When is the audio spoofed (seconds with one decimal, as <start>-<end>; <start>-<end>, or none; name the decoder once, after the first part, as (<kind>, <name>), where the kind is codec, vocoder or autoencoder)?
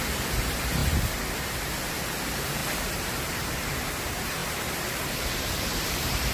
0.0-6.3 (vocoder, BigVGAN v2)